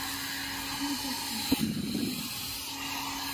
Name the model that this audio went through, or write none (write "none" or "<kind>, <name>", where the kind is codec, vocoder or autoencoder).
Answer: none